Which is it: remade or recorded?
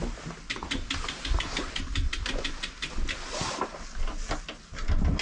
recorded